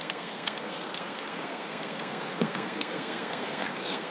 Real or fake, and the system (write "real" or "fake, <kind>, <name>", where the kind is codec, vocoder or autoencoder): fake, codec, SNAC